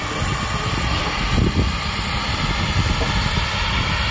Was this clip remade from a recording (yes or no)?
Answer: no